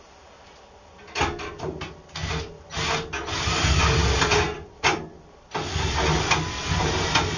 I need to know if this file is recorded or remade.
recorded